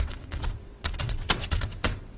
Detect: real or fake fake